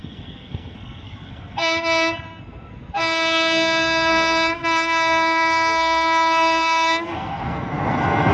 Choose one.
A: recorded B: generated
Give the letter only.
B